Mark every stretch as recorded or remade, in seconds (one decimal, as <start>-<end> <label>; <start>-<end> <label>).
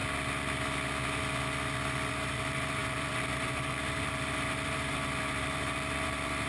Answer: 0.0-2.1 recorded; 2.1-6.5 remade